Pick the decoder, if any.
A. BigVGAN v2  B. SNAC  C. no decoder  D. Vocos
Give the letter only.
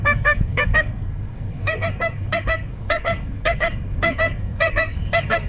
B